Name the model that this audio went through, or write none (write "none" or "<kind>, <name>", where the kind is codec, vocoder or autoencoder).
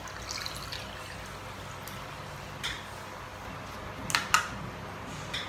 none